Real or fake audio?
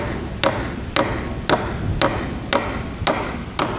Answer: real